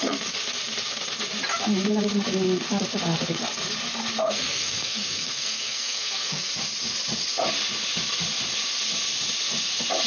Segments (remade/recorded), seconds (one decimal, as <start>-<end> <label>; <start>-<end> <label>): 0.0-4.2 recorded; 4.2-6.5 remade; 6.5-10.1 recorded